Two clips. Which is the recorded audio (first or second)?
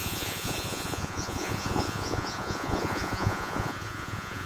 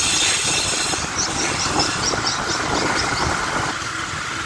second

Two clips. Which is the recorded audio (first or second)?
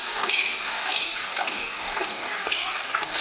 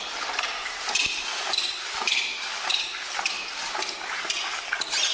second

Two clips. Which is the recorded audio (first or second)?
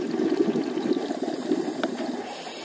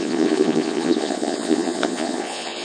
first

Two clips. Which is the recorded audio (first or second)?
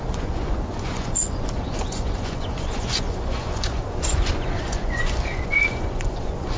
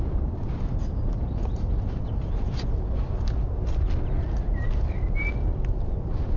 second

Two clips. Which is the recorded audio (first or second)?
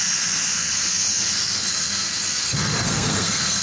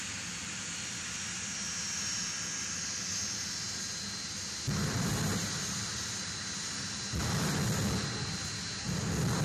second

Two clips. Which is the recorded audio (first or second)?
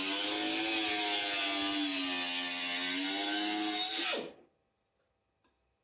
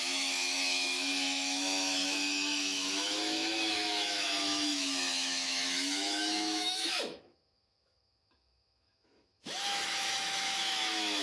first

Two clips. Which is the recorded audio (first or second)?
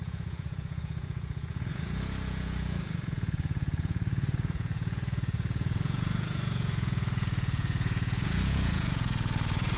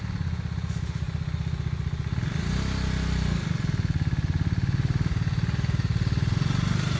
second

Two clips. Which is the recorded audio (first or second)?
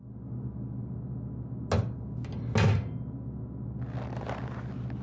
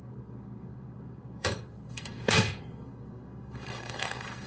first